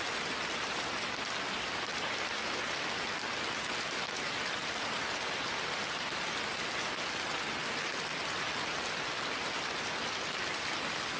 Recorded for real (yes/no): yes